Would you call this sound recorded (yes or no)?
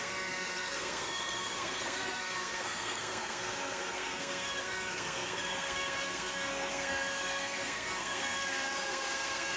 no